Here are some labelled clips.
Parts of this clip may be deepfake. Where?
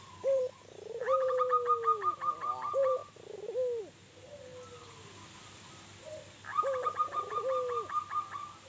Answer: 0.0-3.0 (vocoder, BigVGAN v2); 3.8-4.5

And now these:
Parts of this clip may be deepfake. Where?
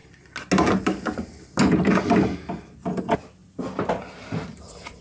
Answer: none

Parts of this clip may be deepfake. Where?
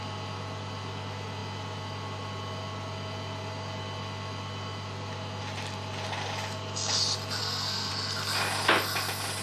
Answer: 7.4-7.9 (codec, SNAC)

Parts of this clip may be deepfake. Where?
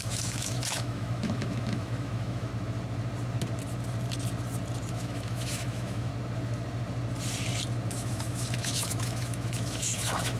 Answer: 0.0-2.5 (autoencoder, DAC-VAE); 4.9-6.1; 7.9-10.4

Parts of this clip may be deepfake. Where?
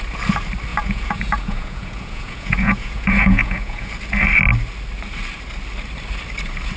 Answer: 0.7-3.9 (vocoder, Vocos)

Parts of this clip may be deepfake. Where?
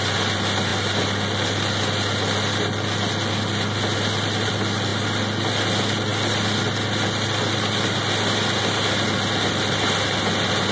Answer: none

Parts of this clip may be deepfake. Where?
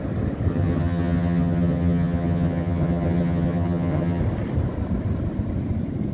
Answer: 0.5-4.2 (vocoder, HiFi-GAN)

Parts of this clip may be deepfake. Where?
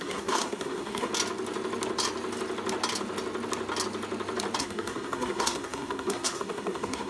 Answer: 0.0-1.1 (codec, SNAC); 4.6-7.1